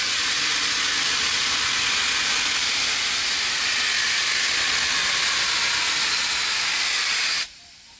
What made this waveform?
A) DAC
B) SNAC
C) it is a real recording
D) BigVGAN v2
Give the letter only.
C